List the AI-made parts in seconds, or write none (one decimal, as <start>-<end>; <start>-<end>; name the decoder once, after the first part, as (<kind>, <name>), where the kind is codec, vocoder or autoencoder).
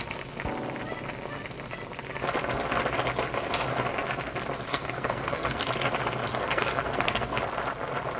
4.7-5.6 (codec, SNAC); 6.3-7.4